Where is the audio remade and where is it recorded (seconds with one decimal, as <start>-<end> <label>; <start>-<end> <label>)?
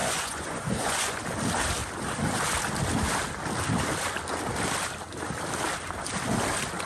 0.0-1.2 remade; 1.2-6.9 recorded